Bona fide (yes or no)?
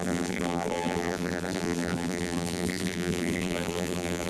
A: no